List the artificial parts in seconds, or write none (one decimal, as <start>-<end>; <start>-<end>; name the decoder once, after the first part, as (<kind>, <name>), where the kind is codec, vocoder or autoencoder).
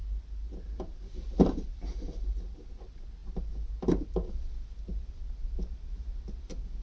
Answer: none